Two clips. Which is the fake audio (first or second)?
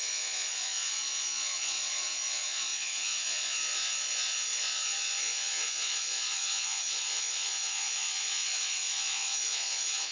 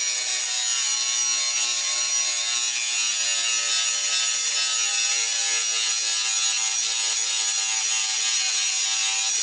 first